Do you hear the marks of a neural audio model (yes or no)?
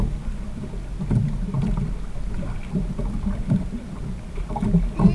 no